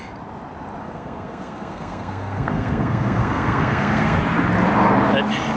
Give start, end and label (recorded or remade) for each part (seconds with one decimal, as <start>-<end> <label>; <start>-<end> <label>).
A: 0.0-0.8 recorded; 0.8-4.2 remade; 4.2-5.6 recorded